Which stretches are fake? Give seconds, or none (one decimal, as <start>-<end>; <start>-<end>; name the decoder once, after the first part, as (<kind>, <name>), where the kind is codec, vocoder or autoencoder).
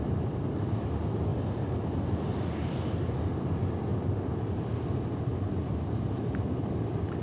none